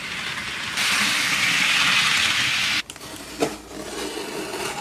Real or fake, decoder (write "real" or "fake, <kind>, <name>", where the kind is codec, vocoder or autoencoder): real